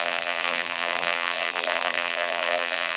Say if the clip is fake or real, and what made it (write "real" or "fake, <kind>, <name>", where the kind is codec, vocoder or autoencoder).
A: fake, vocoder, BigVGAN v2